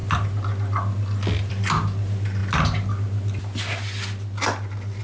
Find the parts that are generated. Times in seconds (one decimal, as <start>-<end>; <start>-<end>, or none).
none